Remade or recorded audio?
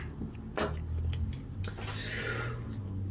recorded